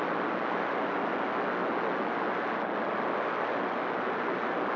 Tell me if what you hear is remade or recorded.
recorded